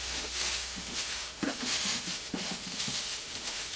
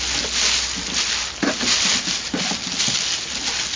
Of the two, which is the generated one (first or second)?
first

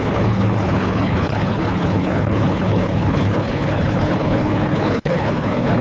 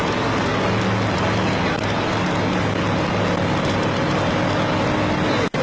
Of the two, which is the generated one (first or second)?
first